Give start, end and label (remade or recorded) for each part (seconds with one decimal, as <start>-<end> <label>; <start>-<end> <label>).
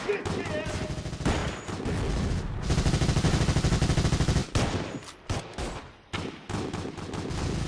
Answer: 0.0-7.7 recorded